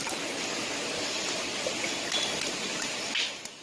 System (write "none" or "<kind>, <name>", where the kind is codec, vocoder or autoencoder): none